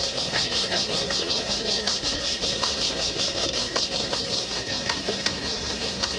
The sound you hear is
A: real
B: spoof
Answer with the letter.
B